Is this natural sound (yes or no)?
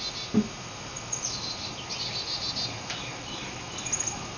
yes